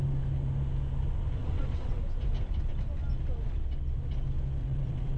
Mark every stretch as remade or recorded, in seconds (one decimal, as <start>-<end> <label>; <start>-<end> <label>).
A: 0.0-1.4 recorded; 1.4-2.0 remade; 2.0-4.6 recorded; 4.6-5.2 remade